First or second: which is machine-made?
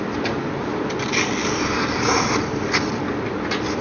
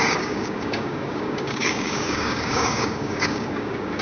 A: second